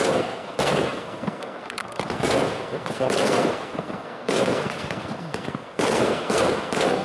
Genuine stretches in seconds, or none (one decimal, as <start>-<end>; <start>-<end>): none